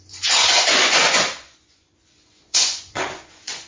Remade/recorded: remade